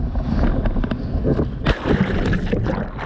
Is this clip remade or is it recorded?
recorded